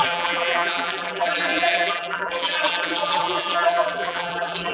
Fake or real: fake